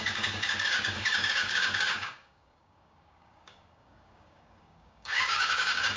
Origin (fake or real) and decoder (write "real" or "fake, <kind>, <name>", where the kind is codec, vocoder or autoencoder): fake, codec, DAC